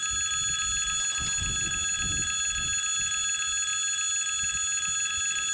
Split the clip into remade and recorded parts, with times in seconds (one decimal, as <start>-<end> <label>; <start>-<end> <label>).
0.0-5.5 recorded

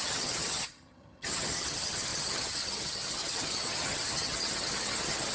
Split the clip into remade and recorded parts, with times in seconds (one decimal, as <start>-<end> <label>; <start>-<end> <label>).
0.0-5.3 remade